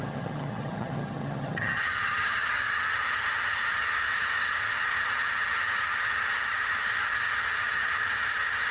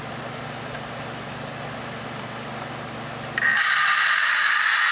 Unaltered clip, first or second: second